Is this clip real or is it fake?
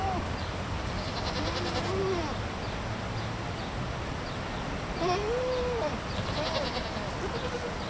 real